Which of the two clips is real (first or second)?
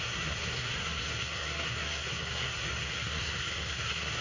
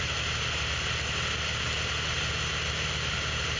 second